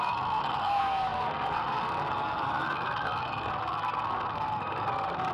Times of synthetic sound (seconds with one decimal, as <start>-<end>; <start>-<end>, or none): 0.0-5.3